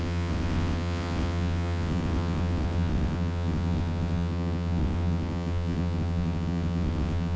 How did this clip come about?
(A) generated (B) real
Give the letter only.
A